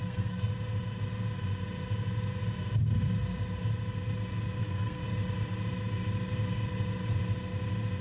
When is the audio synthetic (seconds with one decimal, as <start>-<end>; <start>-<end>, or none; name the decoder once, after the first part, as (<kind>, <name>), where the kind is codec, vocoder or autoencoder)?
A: 0.0-0.5 (codec, SNAC); 4.6-5.0